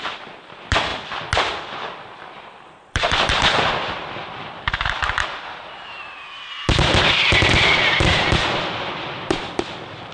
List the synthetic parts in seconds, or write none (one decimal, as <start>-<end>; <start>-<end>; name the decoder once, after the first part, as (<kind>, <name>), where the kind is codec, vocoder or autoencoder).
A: 0.0-0.9 (vocoder, BigVGAN v2); 2.2-5.0; 7.5-10.1

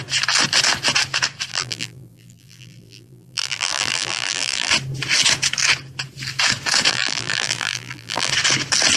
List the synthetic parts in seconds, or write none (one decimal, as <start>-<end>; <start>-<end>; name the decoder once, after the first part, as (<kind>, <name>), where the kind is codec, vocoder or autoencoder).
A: 1.5-4.7 (vocoder, BigVGAN v2); 6.9-8.3

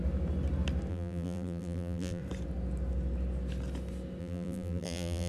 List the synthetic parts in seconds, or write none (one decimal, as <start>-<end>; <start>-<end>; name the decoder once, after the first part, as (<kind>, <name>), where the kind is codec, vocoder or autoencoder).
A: 0.9-2.2 (vocoder, BigVGAN v2); 4.2-5.3

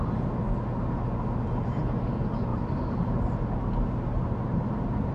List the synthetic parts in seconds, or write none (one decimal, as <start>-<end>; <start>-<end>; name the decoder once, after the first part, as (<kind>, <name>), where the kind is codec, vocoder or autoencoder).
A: 2.5-3.2 (vocoder, BigVGAN v2); 4.1-5.1

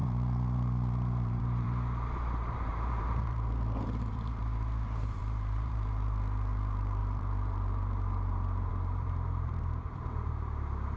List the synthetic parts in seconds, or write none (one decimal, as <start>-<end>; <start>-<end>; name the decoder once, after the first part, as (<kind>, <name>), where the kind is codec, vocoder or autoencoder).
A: 0.0-11.0 (vocoder, BigVGAN v2)

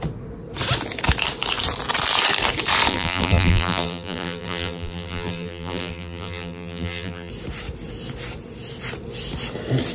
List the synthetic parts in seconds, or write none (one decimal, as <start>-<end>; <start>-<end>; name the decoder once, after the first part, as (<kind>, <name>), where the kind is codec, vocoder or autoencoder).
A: 2.9-7.3 (vocoder, BigVGAN v2)